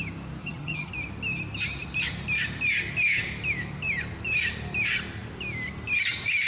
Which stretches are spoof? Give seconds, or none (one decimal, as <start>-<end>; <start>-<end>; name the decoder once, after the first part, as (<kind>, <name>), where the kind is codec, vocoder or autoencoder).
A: 0.4-0.9 (vocoder, HiFi-GAN)